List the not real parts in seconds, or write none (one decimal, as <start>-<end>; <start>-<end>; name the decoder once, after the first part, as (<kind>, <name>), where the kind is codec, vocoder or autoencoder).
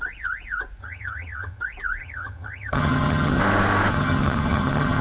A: 0.8-1.6 (vocoder, HiFi-GAN); 2.0-3.4; 3.9-5.0